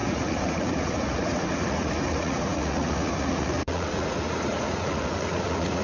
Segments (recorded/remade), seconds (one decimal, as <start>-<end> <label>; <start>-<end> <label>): 0.0-5.8 remade

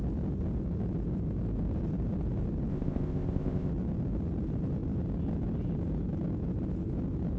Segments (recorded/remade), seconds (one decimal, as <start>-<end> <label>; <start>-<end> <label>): 0.0-2.7 recorded; 2.7-3.7 remade; 3.7-7.4 recorded

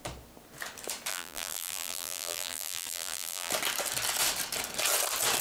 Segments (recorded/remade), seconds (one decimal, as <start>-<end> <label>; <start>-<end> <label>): 0.0-1.1 recorded; 1.1-3.5 remade; 3.5-5.4 recorded

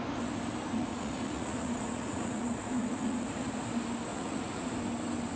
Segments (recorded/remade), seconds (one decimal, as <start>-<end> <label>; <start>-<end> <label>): 0.0-0.7 recorded; 0.7-3.6 remade; 3.6-4.1 recorded; 4.1-4.7 remade; 4.7-5.4 recorded

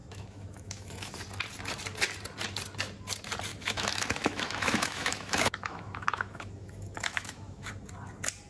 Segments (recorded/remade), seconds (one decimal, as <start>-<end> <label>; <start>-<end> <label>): 0.0-1.1 remade; 1.1-3.5 recorded; 3.5-7.7 remade; 7.7-8.5 recorded

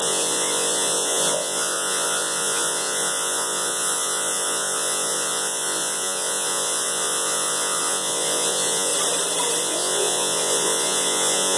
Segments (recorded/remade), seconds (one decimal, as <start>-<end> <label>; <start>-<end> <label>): 0.0-8.9 remade; 8.9-9.6 recorded; 9.6-11.6 remade

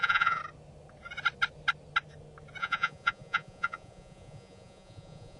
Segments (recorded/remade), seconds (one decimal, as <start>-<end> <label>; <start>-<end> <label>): 0.0-0.4 remade; 0.4-2.6 recorded; 2.6-5.4 remade